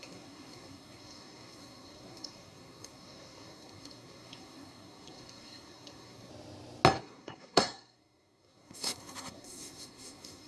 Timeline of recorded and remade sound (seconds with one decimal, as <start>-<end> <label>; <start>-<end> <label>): 0.0-6.3 remade; 6.3-7.0 recorded; 7.0-10.5 remade